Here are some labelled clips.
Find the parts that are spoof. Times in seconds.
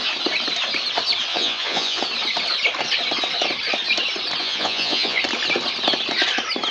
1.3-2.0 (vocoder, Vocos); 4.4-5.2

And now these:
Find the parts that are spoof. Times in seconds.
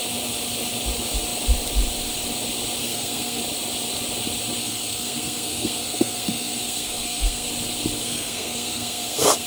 2.8-3.4 (codec, SNAC); 4.6-7.5; 8.0-9.5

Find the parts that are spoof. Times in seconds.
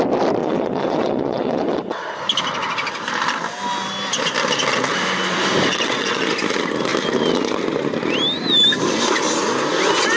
0.4-2.0 (vocoder, WaveNeXt); 5.7-6.2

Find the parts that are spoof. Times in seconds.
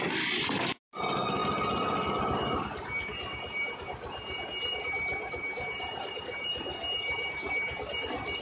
none